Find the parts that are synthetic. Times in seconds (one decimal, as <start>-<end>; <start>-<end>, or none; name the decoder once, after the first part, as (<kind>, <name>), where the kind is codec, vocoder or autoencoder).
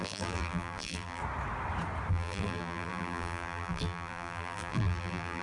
0.0-1.2 (vocoder, BigVGAN v2); 2.1-5.4